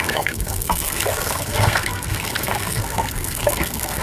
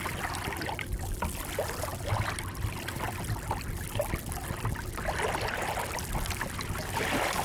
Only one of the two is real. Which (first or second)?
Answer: second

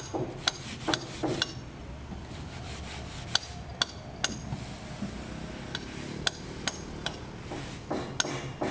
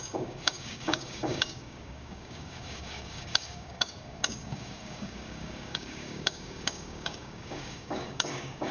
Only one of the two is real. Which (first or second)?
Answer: first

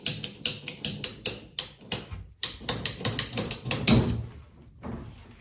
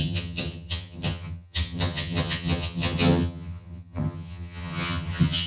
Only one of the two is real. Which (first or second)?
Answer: first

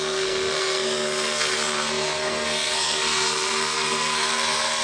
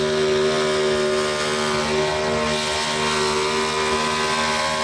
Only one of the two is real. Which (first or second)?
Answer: second